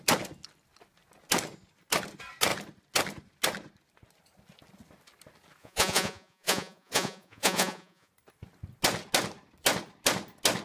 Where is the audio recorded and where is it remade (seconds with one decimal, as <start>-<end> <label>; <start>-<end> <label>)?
0.0-5.6 recorded; 5.6-8.1 remade; 8.1-10.6 recorded